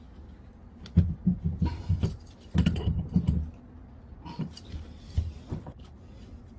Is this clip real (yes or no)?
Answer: yes